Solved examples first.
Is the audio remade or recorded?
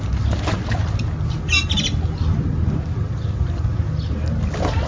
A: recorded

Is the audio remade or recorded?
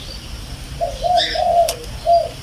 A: recorded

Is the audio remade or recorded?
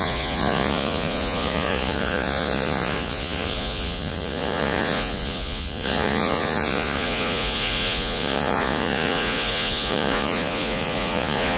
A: remade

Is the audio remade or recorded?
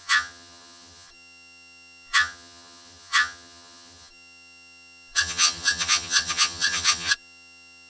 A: remade